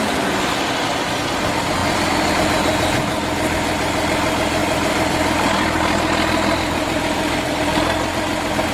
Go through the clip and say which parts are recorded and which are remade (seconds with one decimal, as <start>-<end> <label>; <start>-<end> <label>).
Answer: 0.0-1.8 recorded; 1.8-2.3 remade; 2.3-4.6 recorded; 4.6-7.4 remade; 7.4-8.7 recorded